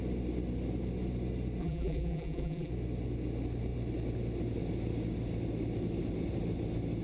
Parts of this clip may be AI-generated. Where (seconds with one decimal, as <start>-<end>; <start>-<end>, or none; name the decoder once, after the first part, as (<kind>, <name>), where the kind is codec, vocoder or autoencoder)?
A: 1.6-2.7 (vocoder, BigVGAN v2)